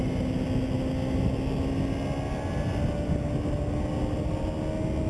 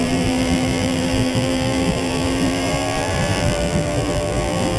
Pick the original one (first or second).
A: first